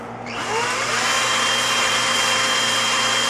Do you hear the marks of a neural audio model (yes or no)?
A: yes